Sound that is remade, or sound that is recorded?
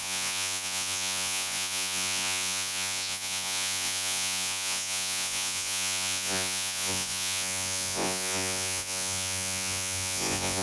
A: remade